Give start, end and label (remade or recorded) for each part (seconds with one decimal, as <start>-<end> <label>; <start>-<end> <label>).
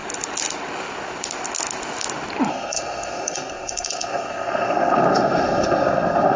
0.0-2.5 recorded; 2.5-6.4 remade